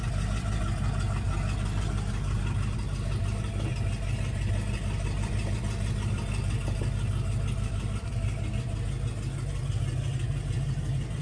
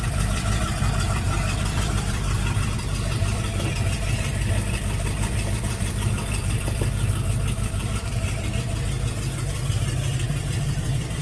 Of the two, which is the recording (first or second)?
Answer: first